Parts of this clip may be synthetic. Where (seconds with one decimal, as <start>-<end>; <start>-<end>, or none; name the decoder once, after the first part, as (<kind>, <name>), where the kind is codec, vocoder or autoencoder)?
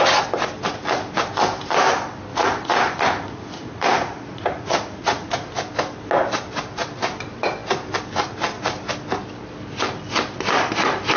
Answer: 2.3-5.5 (vocoder, Vocos)